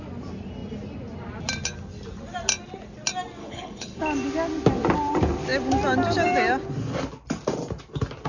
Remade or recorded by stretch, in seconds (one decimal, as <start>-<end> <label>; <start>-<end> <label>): 0.0-3.4 recorded; 3.4-4.0 remade; 4.0-8.3 recorded